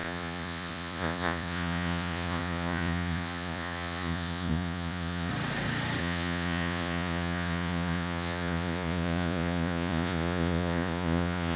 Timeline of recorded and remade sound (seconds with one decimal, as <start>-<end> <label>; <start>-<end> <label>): 0.0-5.3 remade; 5.3-6.0 recorded; 6.0-11.6 remade